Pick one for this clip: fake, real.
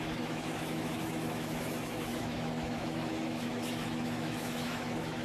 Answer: fake